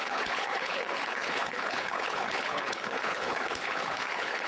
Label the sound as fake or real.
fake